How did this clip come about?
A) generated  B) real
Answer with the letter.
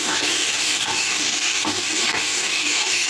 A